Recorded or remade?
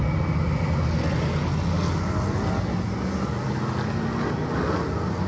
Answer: recorded